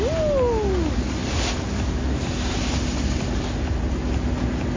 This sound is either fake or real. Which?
real